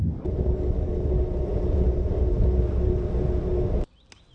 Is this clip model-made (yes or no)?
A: no